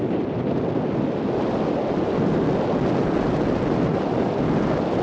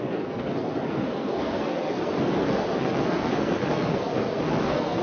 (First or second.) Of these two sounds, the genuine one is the first